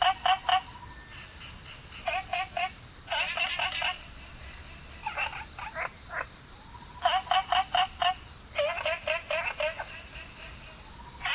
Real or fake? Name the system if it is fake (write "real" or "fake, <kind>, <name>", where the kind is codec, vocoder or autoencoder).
real